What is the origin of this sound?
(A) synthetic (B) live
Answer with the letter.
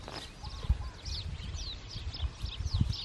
B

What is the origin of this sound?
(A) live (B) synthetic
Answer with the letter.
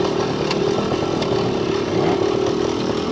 A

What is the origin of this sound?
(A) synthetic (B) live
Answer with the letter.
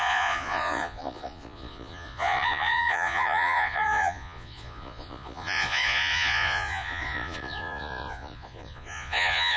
A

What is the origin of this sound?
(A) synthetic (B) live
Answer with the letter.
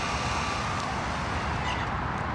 B